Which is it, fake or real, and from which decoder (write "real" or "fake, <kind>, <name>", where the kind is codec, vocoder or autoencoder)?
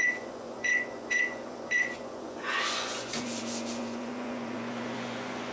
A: fake, vocoder, Vocos